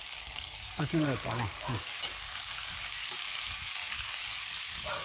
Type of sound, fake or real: fake